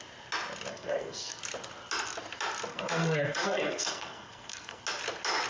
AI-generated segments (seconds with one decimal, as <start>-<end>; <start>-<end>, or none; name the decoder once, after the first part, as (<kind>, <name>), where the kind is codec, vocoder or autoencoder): 0.7-1.4 (codec, SNAC); 2.7-4.8